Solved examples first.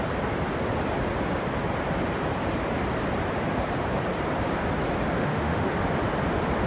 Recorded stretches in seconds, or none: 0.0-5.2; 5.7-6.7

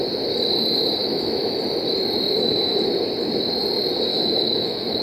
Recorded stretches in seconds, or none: 0.0-1.0; 1.6-4.1

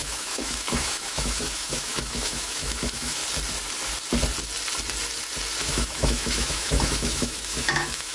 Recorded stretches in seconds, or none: 3.2-5.6

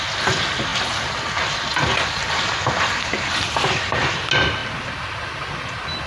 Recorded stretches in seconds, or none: 0.0-6.1

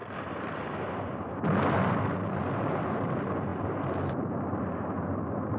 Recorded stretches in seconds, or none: none